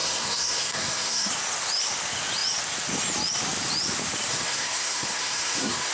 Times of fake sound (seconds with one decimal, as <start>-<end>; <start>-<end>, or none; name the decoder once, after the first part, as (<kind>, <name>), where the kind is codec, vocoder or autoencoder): 0.0-1.3 (codec, SNAC); 4.3-5.9